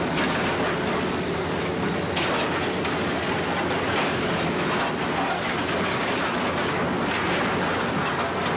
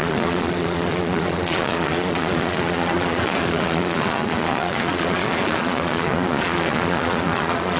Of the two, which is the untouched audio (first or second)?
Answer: first